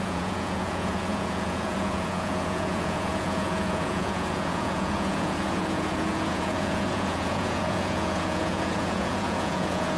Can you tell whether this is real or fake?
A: fake